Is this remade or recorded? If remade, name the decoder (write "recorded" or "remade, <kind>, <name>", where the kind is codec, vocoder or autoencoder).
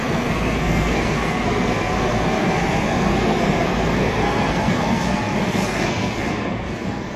remade, codec, SNAC